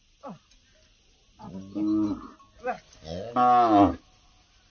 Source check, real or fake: real